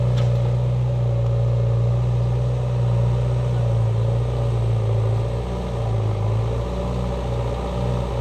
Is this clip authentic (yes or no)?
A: yes